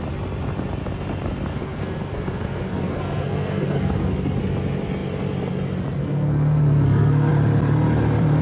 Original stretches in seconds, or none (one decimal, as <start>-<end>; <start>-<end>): 0.0-1.5; 4.4-6.0; 7.3-8.4